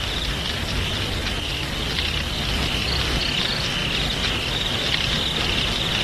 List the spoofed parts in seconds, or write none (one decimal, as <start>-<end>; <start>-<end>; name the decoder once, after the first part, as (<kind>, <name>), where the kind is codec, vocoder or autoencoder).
none